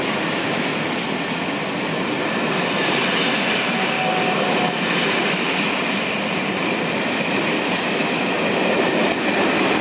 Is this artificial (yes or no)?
no